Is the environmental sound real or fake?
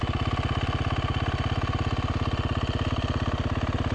real